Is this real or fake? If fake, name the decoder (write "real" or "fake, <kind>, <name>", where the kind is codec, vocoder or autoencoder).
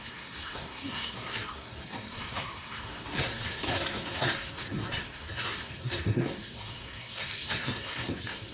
fake, codec, SNAC